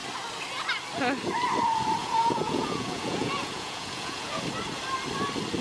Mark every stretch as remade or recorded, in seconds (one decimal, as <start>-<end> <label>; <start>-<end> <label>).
0.0-2.0 recorded; 2.0-4.4 remade; 4.4-5.6 recorded